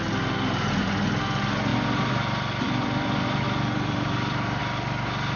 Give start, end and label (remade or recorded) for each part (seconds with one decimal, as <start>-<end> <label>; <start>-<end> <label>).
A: 0.0-1.7 recorded; 1.7-4.6 remade; 4.6-5.4 recorded